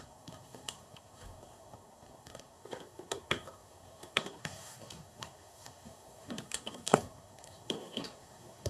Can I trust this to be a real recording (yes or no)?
no